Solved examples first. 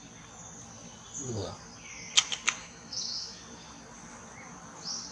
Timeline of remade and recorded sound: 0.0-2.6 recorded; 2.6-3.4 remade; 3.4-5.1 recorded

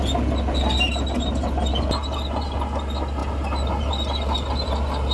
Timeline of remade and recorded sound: 0.0-5.1 recorded